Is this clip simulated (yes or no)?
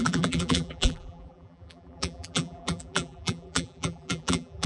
yes